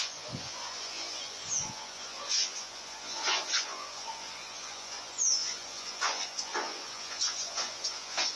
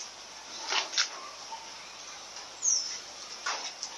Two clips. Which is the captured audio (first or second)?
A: second